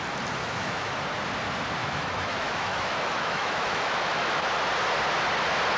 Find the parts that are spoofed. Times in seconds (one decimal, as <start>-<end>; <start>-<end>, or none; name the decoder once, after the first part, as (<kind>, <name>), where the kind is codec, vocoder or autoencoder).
0.4-0.9 (autoencoder, DAC-VAE); 1.8-4.5